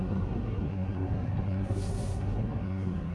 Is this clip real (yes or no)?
no